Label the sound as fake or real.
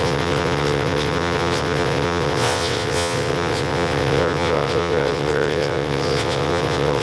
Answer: fake